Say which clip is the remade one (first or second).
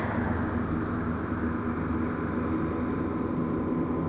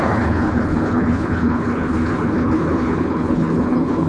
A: second